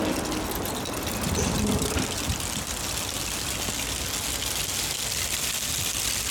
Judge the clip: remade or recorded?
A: recorded